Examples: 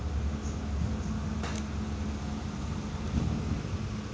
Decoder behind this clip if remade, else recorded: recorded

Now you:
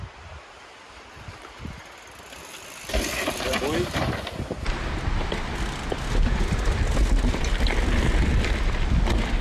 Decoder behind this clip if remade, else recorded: recorded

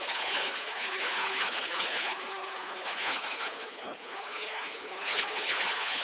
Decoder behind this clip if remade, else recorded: remade, codec, HILCodec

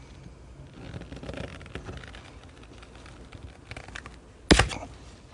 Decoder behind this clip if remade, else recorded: recorded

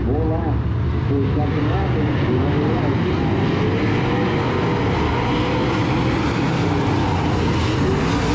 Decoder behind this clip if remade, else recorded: recorded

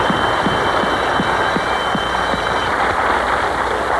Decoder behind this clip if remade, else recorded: recorded